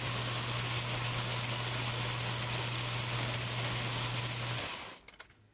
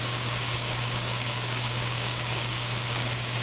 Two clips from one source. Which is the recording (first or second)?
first